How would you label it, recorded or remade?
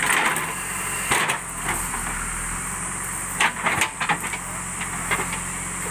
recorded